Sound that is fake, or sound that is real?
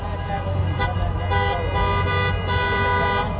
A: real